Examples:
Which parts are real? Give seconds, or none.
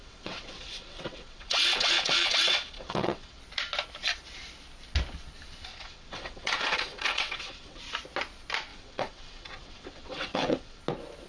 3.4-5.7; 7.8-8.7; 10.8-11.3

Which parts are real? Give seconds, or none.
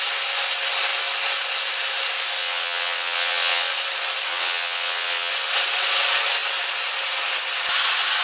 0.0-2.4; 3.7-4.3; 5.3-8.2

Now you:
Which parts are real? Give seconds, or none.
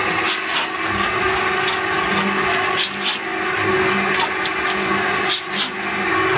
0.0-6.4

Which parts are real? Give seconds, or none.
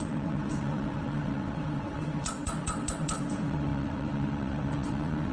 none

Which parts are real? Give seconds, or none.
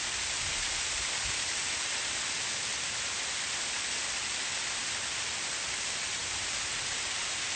0.0-7.6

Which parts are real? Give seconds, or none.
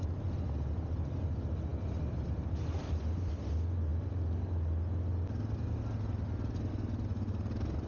0.0-7.9